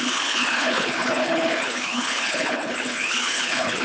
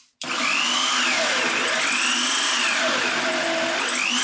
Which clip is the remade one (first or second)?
first